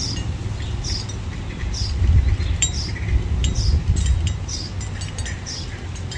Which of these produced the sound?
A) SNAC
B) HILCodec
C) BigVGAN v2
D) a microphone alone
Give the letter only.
D